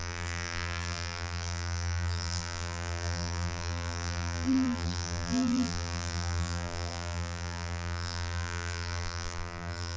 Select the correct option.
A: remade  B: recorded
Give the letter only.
A